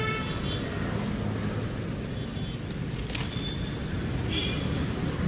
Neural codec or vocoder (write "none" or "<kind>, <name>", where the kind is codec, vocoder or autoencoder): none